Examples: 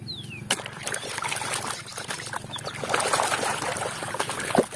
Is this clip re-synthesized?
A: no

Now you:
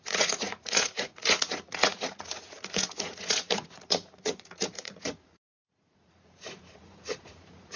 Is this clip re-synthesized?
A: yes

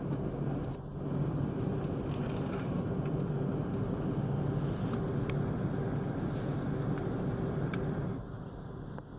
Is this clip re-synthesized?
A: no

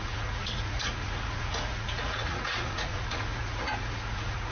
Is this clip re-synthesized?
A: yes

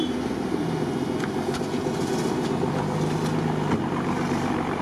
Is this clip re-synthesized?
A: no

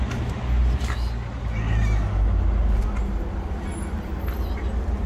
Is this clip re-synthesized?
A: no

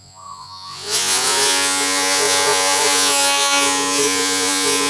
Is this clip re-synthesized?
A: yes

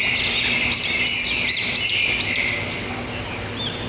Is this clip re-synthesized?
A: no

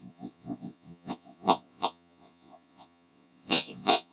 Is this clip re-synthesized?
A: yes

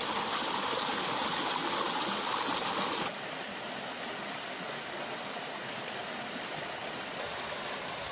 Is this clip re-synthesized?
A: no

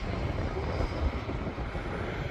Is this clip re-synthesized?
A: no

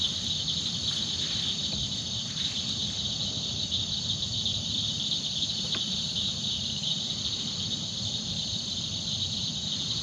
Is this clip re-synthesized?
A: no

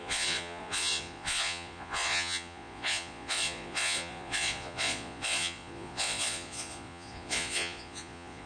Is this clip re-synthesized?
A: yes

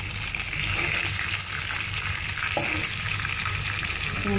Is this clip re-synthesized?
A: no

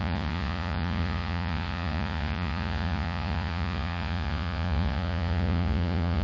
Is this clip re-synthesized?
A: yes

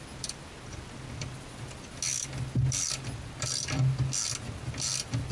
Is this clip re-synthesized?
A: no